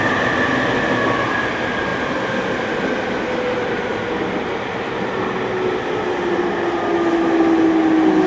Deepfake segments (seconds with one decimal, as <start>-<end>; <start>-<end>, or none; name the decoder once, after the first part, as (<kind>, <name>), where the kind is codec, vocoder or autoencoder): none